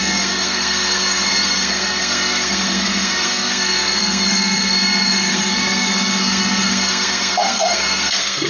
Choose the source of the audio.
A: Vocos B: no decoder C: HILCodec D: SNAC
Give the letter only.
D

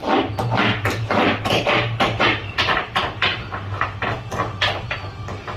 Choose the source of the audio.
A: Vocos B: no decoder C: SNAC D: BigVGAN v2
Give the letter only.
B